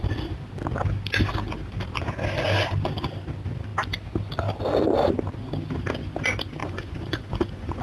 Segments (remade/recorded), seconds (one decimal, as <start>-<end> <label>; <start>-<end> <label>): 0.0-6.6 recorded; 6.6-7.8 remade